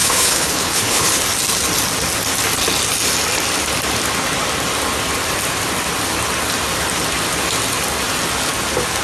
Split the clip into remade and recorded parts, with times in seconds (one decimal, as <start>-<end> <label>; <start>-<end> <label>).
0.0-1.2 remade; 1.2-9.0 recorded